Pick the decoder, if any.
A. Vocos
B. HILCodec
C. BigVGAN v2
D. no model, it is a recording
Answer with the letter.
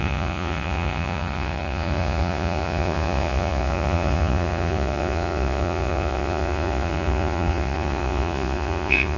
A